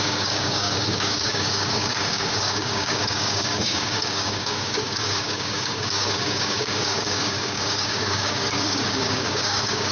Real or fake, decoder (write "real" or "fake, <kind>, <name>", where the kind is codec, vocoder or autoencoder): fake, codec, DAC